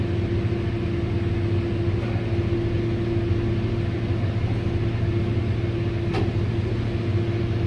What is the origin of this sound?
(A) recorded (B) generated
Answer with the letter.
A